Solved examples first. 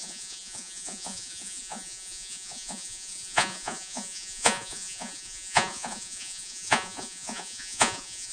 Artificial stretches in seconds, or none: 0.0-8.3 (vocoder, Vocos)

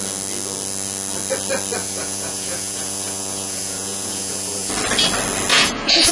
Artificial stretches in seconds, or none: 1.8-4.7 (vocoder, Vocos); 5.5-6.1

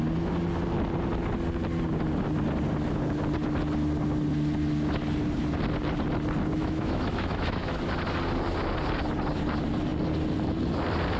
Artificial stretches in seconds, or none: 6.6-7.8 (autoencoder, DAC-VAE)

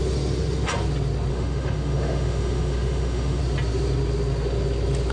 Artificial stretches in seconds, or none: 1.3-3.4 (autoencoder, DAC-VAE)

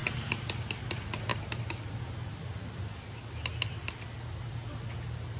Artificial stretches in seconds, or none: none